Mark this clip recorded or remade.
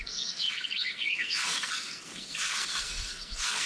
remade